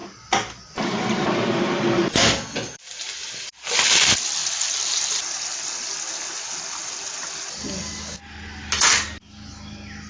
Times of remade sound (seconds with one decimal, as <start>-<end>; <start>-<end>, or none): none